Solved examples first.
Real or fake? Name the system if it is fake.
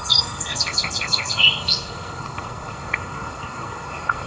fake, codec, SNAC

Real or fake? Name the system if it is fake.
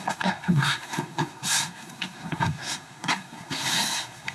fake, codec, SNAC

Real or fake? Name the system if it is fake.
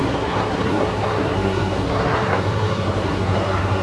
fake, codec, SNAC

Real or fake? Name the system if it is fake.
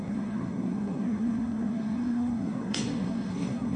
fake, codec, SNAC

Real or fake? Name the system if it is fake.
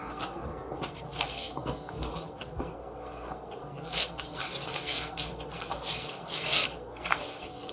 fake, codec, SNAC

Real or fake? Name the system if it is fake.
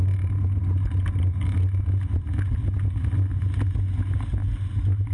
real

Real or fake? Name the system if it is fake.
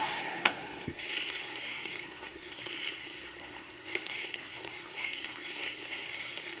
fake, codec, SNAC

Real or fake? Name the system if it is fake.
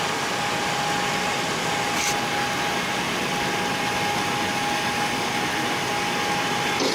real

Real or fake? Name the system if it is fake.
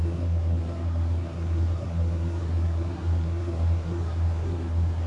fake, codec, SNAC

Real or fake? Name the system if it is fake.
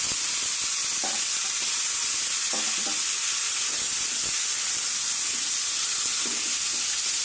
real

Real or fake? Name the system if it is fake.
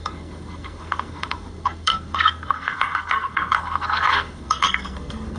fake, codec, SNAC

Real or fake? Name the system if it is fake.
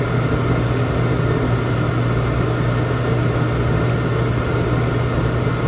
real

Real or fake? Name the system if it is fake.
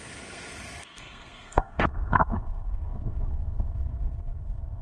fake, codec, SNAC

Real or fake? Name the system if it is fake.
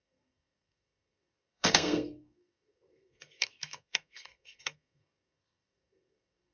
fake, codec, SNAC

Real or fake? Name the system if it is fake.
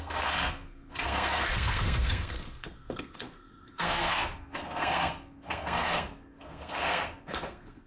fake, codec, SNAC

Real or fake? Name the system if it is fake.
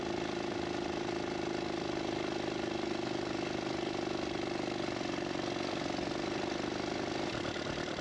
real